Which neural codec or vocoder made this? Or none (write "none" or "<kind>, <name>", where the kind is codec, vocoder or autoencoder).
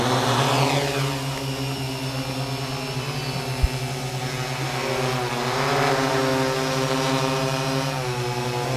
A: none